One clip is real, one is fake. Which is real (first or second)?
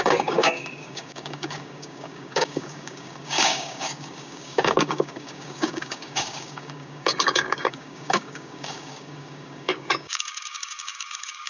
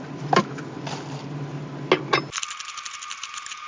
second